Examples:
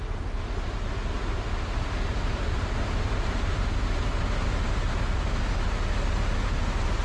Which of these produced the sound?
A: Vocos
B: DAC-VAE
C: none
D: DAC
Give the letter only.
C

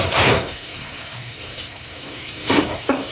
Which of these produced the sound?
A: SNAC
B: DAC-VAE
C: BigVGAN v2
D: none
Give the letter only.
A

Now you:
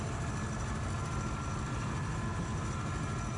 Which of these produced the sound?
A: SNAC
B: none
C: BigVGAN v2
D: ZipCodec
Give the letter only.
B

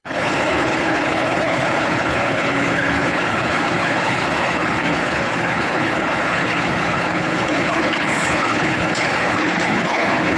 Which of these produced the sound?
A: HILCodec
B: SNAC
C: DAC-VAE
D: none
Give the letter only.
A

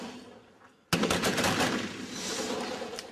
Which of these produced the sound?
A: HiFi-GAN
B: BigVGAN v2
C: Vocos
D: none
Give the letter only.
D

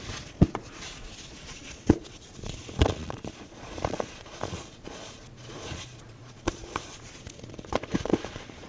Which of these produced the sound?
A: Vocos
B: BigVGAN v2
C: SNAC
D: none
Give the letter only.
A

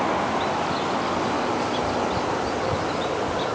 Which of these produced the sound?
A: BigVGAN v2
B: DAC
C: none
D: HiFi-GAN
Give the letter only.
C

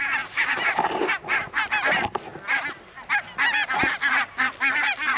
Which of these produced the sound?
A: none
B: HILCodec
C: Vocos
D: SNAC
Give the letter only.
A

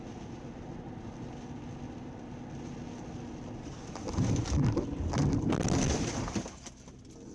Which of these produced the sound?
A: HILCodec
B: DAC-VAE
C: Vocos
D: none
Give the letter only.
D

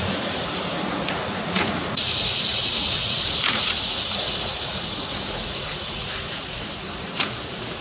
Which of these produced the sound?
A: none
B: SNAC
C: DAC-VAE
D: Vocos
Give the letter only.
D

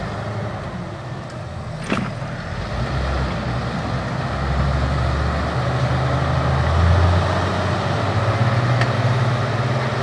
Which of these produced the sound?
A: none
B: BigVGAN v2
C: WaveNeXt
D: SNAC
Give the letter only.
A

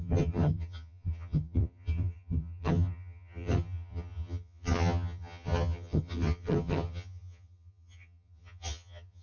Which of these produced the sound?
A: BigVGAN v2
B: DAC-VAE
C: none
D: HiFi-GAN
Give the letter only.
D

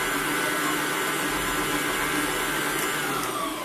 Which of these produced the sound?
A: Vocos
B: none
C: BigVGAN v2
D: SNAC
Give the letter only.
B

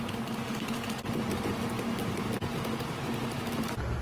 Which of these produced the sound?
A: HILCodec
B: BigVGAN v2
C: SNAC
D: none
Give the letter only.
D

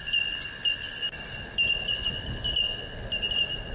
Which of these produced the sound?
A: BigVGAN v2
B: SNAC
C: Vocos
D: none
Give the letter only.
D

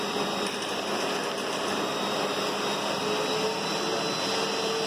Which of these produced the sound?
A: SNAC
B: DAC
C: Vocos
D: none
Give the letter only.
D